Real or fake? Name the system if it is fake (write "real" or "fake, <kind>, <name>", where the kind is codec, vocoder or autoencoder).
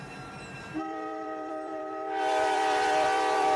fake, vocoder, BigVGAN v2